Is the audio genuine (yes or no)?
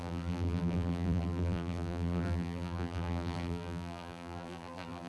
no